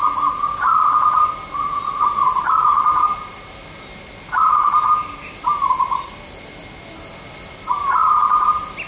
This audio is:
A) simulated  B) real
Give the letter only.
B